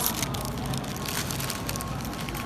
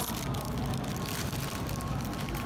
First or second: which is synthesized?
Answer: second